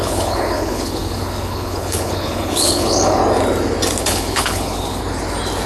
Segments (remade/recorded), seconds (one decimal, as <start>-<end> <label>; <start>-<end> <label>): 0.0-3.2 remade; 3.2-4.0 recorded; 4.0-5.0 remade; 5.0-5.7 recorded